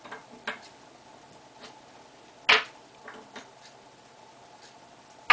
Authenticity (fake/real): real